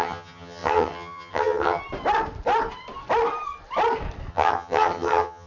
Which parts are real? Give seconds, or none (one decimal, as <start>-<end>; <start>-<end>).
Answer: 1.8-4.3